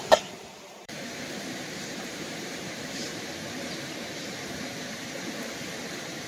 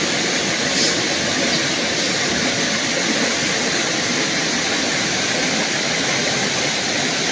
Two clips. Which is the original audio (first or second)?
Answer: second